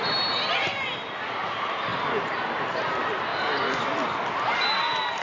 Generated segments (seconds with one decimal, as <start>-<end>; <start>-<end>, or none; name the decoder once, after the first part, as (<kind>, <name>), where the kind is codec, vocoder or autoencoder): none